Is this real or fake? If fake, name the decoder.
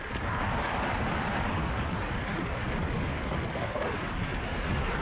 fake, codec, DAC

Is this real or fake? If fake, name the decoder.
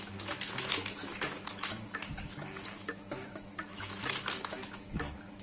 fake, autoencoder, DAC-VAE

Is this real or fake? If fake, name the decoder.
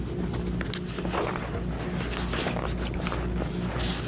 real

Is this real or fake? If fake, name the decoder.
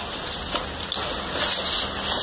real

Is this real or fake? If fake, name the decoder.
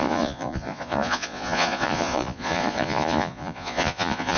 fake, vocoder, Vocos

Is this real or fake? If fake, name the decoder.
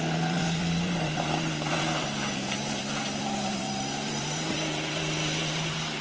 fake, vocoder, BigVGAN v2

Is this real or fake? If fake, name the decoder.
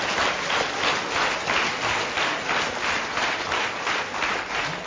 real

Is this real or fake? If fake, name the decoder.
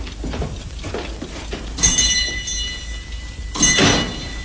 real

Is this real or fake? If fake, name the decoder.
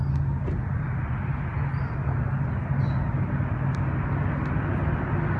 real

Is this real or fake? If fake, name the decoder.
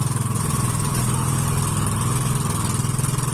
real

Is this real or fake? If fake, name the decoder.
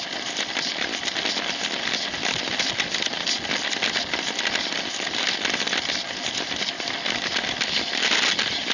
fake, vocoder, BigVGAN v2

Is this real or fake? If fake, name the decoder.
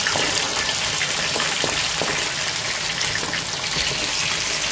real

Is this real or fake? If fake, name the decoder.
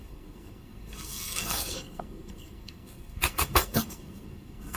fake, codec, SNAC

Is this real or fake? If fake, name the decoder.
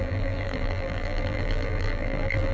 fake, vocoder, BigVGAN v2